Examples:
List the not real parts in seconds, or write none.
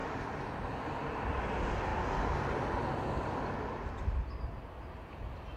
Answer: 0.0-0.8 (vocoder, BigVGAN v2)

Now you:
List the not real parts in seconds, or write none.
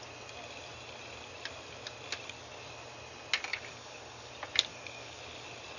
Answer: 3.5-4.3 (codec, DAC); 4.7-5.2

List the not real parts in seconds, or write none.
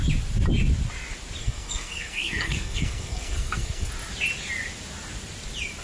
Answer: 1.4-3.9 (codec, SNAC)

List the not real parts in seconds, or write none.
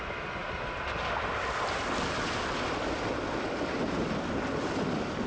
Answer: none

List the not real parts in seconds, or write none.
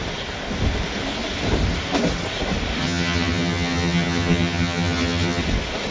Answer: 2.8-5.4 (vocoder, HiFi-GAN)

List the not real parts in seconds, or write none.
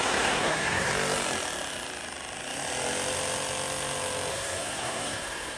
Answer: 0.0-0.9 (codec, SNAC); 4.3-5.6